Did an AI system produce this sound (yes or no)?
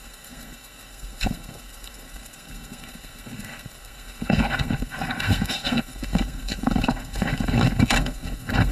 yes